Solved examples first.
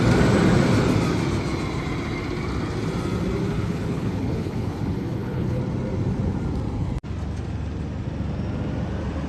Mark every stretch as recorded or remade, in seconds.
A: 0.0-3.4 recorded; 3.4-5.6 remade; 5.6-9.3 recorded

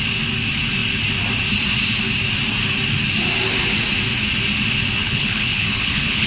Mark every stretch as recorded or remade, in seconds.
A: 0.0-5.0 recorded; 5.0-6.3 remade

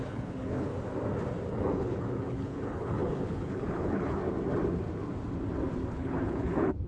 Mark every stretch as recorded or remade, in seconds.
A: 0.0-0.7 remade; 0.7-1.5 recorded; 1.5-4.2 remade; 4.2-5.9 recorded; 5.9-6.9 remade

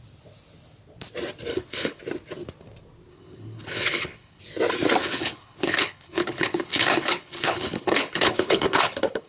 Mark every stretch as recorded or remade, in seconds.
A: 0.0-1.5 recorded; 1.5-2.0 remade; 2.0-3.1 recorded; 3.1-4.4 remade; 4.4-5.0 recorded; 5.0-9.3 remade

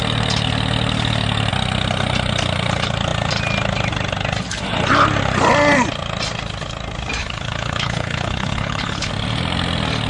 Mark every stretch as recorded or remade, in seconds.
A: 0.0-7.2 recorded; 7.2-9.1 remade; 9.1-10.1 recorded

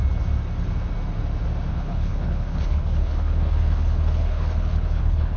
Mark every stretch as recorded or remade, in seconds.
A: 0.0-1.7 recorded; 1.7-5.4 remade

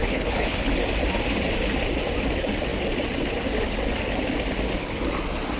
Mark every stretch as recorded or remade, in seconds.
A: 0.0-0.7 remade; 0.7-5.6 recorded